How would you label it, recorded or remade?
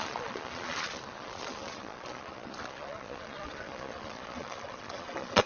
remade